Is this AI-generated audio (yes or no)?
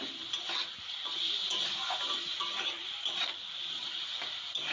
no